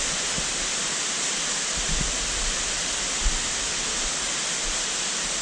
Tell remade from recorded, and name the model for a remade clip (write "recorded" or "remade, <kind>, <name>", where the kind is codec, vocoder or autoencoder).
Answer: recorded